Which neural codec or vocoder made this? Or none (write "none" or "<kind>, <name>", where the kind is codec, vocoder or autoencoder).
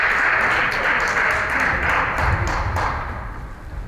none